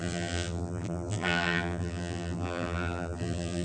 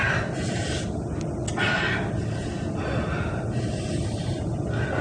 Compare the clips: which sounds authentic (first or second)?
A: second